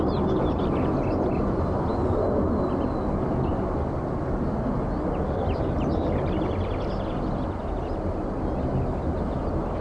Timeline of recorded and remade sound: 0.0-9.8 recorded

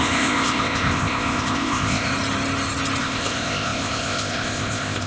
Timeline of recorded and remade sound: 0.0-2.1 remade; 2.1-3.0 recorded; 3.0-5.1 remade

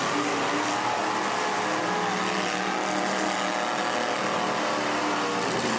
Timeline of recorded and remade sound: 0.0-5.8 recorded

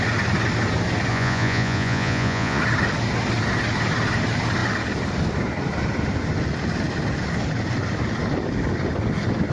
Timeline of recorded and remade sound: 0.0-1.1 recorded; 1.1-2.6 remade; 2.6-9.5 recorded

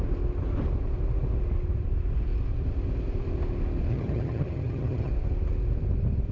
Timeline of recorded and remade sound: 0.0-3.9 recorded; 3.9-5.1 remade; 5.1-6.3 recorded